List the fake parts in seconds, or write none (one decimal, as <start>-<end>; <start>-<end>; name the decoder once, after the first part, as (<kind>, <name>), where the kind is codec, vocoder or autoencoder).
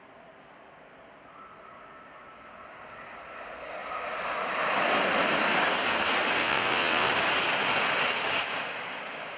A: 6.4-7.1 (vocoder, WaveNeXt)